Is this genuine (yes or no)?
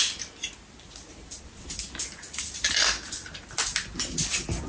yes